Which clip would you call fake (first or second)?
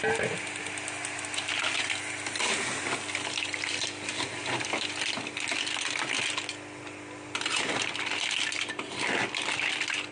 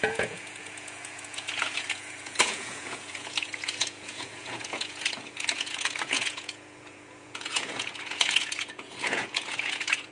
second